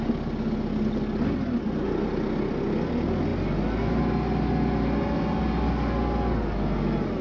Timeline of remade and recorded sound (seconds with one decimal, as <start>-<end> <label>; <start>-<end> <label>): 0.0-7.2 recorded